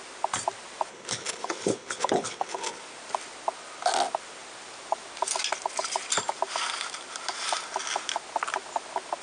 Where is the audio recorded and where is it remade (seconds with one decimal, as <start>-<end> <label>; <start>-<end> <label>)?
0.0-0.9 recorded; 0.9-2.8 remade; 2.8-9.2 recorded